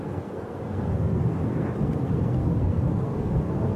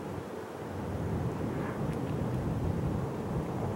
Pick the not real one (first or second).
first